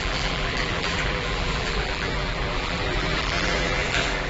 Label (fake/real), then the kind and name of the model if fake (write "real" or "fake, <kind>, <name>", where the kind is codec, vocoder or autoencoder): fake, vocoder, BigVGAN v2